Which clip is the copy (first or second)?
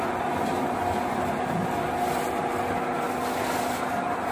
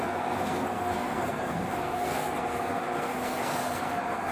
second